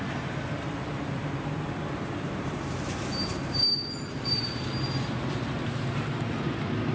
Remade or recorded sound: remade